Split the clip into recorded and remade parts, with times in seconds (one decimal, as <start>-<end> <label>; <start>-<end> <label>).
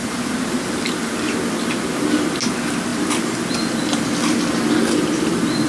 0.0-5.7 recorded